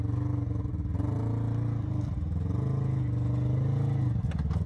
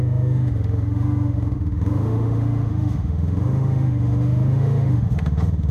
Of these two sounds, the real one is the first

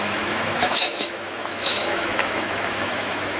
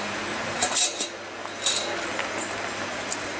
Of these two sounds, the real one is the second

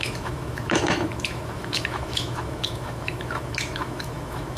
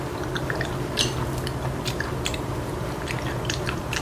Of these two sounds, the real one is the second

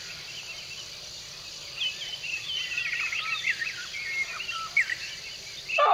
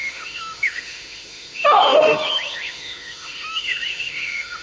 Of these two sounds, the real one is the first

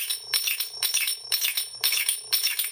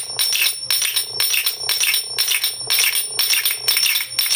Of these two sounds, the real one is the second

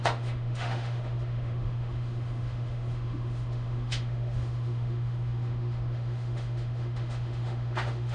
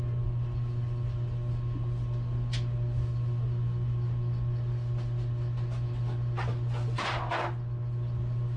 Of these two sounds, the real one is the second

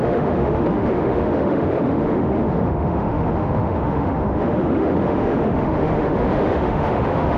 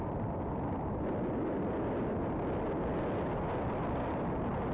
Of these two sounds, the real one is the second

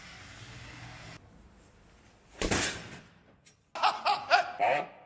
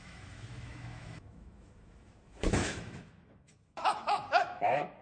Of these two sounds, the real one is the first